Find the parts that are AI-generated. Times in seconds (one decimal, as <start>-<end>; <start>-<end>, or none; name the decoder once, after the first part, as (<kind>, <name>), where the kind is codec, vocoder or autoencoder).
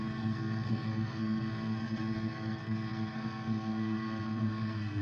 0.0-5.0 (codec, SNAC)